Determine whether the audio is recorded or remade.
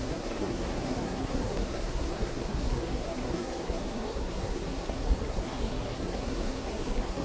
remade